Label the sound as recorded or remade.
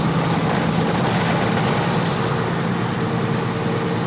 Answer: recorded